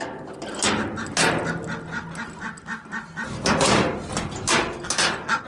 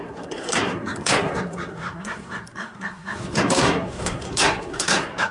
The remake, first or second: second